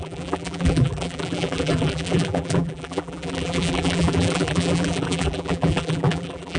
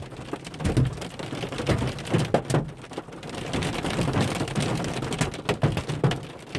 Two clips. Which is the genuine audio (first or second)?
second